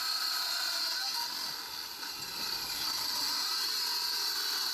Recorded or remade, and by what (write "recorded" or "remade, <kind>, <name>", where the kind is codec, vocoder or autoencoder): recorded